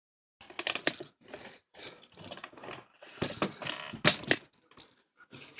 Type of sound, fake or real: real